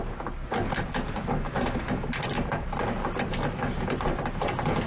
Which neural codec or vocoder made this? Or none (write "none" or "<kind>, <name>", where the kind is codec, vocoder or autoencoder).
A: none